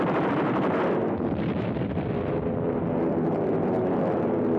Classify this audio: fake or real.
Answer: real